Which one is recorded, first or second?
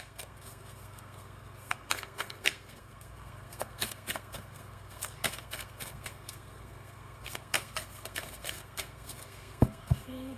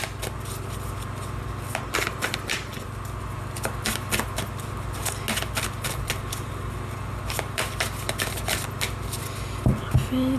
second